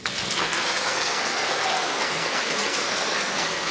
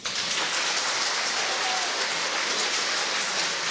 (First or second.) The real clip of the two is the second